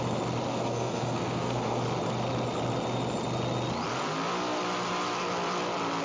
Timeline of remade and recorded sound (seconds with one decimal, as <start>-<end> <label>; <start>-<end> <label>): 0.0-0.5 recorded; 0.5-1.8 remade; 1.8-6.0 recorded